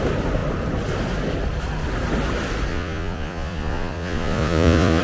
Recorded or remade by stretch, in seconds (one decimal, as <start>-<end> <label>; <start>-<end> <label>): 0.0-2.7 recorded; 2.7-5.0 remade